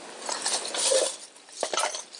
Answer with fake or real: real